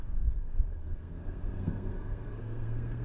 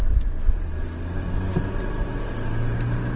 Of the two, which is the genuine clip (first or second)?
second